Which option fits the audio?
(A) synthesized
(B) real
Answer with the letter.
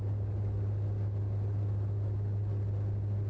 B